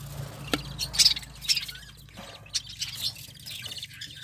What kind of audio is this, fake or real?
real